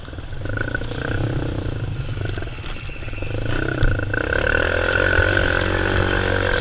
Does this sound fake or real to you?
real